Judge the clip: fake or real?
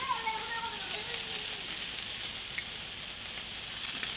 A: real